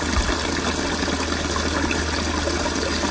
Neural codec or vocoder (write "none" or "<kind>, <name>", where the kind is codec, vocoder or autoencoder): none